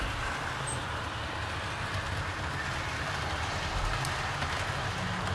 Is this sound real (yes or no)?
yes